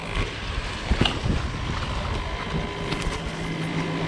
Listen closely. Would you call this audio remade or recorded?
recorded